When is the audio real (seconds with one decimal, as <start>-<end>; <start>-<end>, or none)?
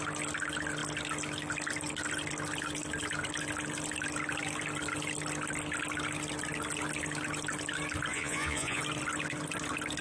0.0-8.1; 8.8-10.0